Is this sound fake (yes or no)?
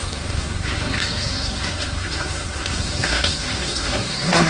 yes